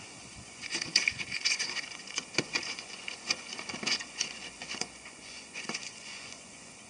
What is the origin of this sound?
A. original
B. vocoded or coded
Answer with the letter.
B